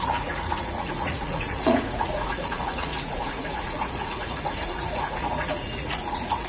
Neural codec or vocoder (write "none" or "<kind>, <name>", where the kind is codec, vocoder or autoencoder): vocoder, Vocos